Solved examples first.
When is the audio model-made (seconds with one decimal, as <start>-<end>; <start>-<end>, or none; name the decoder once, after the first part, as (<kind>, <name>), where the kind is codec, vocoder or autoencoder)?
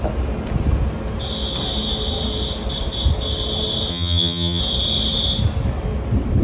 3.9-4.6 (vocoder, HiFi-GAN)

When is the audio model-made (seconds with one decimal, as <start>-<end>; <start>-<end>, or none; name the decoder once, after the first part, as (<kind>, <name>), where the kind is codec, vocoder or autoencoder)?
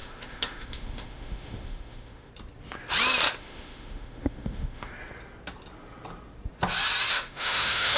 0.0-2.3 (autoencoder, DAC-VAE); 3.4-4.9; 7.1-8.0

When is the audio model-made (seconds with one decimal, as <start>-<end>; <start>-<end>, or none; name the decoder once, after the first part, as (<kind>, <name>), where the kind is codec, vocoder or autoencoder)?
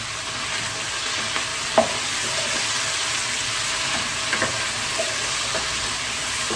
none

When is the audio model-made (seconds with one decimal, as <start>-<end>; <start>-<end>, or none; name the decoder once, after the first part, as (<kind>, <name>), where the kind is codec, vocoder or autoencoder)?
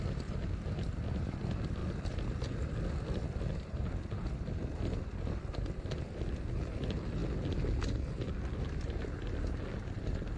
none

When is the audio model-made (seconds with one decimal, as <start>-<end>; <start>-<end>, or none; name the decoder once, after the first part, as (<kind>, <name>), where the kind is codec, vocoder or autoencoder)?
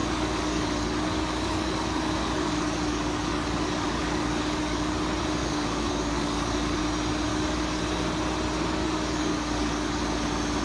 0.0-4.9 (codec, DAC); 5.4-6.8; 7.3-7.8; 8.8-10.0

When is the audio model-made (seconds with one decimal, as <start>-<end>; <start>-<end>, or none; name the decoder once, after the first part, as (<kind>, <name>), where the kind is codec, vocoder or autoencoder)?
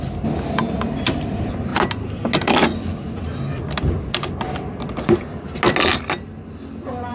none